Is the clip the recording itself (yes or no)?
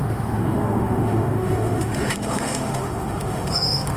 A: no